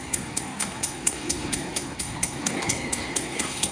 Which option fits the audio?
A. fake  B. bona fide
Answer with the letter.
A